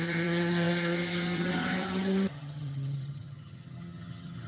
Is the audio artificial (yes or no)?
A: yes